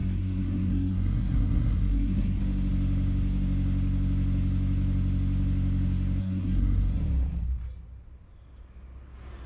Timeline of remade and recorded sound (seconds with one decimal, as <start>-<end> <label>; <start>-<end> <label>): 0.0-2.4 remade; 2.4-6.2 recorded; 6.2-7.0 remade; 7.0-9.5 recorded